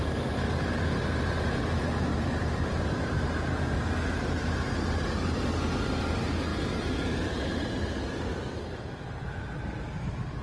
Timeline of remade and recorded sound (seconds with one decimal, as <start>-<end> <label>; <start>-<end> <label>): 0.0-2.1 recorded; 2.1-2.7 remade; 2.7-10.4 recorded